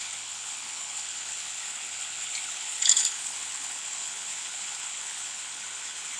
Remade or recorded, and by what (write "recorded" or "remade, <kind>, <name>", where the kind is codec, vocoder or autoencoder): remade, codec, HILCodec